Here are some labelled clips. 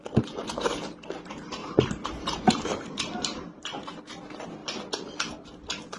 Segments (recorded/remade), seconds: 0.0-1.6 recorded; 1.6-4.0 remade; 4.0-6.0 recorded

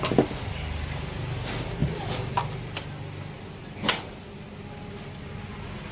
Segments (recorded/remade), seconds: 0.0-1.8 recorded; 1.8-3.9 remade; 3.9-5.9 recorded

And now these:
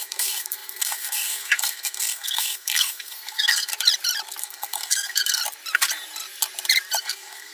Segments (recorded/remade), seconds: 0.0-3.7 remade; 3.7-4.4 recorded; 4.4-5.4 remade; 5.4-7.0 recorded; 7.0-7.5 remade

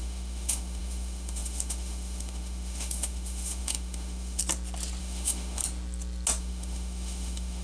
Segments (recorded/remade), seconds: 0.0-4.4 remade; 4.4-5.0 recorded; 5.0-5.6 remade; 5.6-6.4 recorded; 6.4-7.6 remade